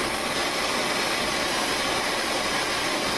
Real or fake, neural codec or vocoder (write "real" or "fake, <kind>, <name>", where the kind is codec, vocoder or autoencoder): real